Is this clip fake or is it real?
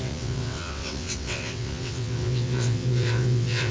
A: fake